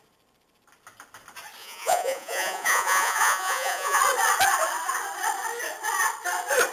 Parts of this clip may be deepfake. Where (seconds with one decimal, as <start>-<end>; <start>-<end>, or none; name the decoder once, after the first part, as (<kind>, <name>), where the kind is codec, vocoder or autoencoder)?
1.6-4.0 (vocoder, Vocos)